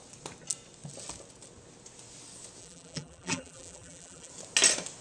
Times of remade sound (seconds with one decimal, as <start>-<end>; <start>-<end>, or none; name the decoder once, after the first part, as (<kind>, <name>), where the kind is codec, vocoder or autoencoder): 2.6-4.3 (vocoder, BigVGAN v2)